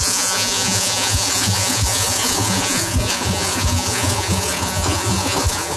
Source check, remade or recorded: remade